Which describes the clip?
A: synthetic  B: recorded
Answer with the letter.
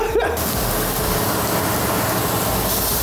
B